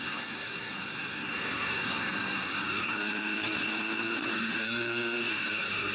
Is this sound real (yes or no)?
no